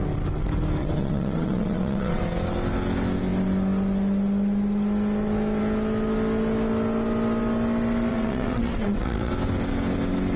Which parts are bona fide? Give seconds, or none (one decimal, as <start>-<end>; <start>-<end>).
0.0-0.8; 2.2-8.1; 9.3-10.4